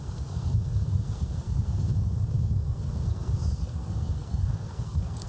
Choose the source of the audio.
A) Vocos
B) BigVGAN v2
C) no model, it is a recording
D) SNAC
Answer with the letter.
D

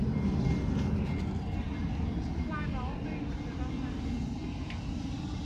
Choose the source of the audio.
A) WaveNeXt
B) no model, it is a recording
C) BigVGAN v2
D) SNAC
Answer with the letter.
B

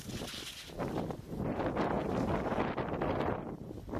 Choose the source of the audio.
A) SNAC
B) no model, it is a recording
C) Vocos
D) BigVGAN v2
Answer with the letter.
B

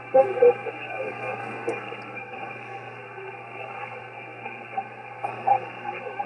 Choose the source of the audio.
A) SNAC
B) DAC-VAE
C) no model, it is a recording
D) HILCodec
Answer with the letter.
A